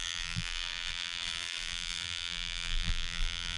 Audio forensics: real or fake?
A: fake